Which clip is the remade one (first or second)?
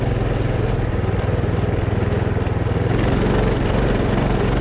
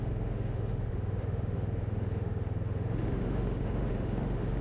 second